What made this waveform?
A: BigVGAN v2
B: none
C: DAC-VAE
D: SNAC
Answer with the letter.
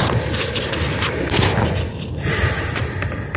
B